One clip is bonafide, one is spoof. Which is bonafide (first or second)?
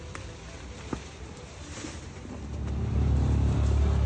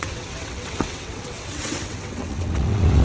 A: first